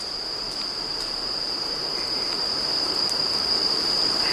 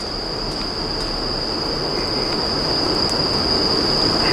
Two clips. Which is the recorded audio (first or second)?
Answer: second